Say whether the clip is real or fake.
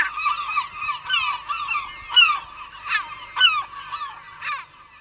real